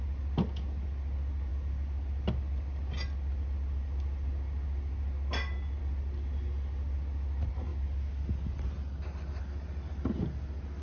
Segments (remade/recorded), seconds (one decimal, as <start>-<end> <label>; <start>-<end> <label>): 0.0-10.8 recorded